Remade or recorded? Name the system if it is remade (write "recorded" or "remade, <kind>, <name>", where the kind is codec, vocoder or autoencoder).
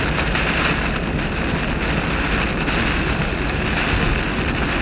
recorded